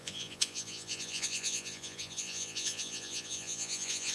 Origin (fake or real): fake